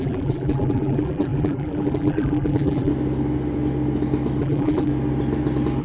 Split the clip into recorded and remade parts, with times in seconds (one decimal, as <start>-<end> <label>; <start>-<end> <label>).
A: 0.0-2.9 remade; 2.9-4.4 recorded; 4.4-4.9 remade; 4.9-5.8 recorded